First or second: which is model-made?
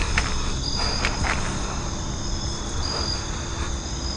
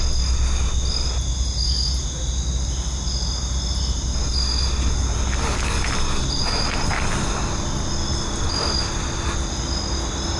first